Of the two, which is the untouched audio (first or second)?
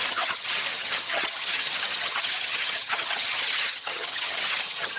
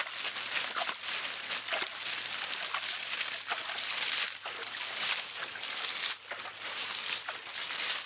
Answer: second